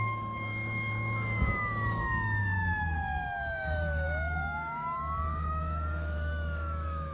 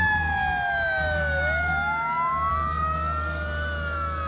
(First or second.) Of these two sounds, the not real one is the first